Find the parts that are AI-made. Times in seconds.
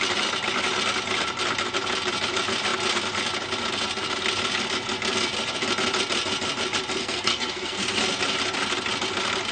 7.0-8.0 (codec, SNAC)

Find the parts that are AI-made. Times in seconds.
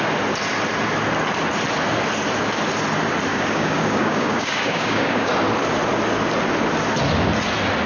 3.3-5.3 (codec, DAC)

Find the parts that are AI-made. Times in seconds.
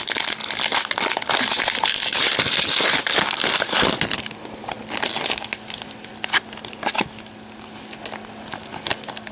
none